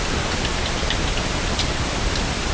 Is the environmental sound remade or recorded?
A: recorded